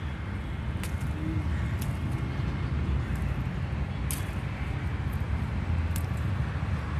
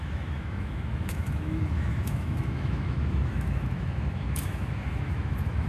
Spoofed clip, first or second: second